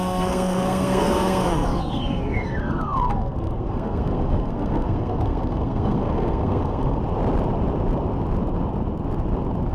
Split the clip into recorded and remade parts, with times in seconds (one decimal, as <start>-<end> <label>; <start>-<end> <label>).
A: 0.0-7.0 remade; 7.0-9.7 recorded

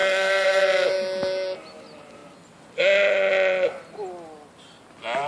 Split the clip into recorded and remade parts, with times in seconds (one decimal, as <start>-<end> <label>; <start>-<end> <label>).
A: 0.0-0.6 remade; 0.6-5.3 recorded